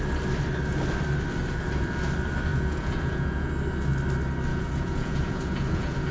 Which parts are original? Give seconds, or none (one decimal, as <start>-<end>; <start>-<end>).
0.0-2.5; 3.5-4.5